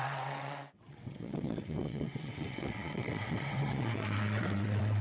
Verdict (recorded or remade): remade